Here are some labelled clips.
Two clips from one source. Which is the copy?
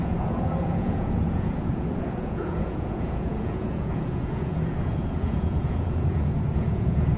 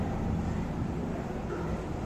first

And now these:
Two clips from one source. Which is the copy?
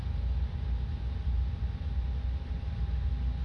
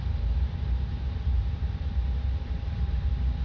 second